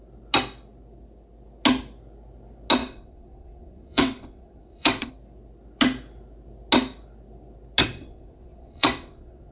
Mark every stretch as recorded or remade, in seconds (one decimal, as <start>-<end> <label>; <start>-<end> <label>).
0.0-2.8 recorded; 2.8-5.1 remade; 5.1-7.8 recorded; 7.8-9.5 remade